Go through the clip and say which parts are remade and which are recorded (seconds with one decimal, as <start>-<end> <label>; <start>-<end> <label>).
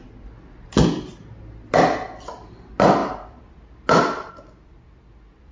0.0-5.5 recorded